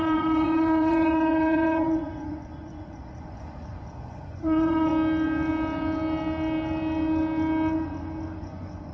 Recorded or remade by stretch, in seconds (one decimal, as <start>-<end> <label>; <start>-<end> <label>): 0.0-4.9 remade; 4.9-8.4 recorded; 8.4-8.9 remade